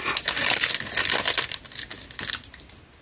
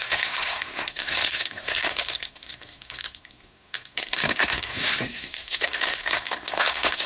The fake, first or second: second